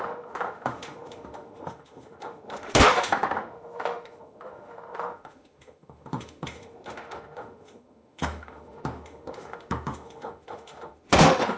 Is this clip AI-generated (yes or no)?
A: yes